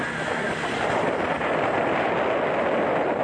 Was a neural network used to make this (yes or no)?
no